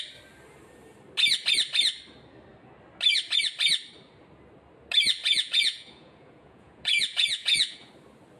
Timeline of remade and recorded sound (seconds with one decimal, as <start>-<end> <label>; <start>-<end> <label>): 0.0-5.2 recorded; 5.2-7.9 remade; 7.9-8.4 recorded